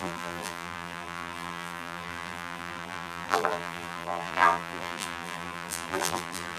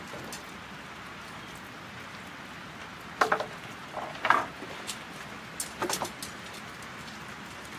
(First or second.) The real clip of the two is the second